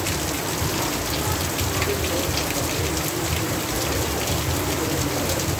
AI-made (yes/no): no